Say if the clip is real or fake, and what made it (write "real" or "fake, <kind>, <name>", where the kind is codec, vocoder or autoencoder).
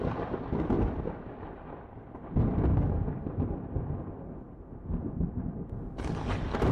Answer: real